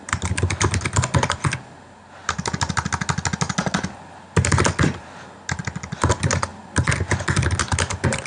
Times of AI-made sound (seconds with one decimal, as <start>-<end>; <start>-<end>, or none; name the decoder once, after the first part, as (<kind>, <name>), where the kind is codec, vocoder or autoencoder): none